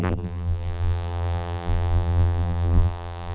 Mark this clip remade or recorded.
remade